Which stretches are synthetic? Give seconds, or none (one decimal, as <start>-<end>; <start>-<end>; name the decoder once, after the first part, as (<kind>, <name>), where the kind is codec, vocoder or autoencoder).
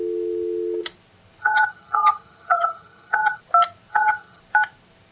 1.4-3.4 (vocoder, HiFi-GAN); 3.9-4.4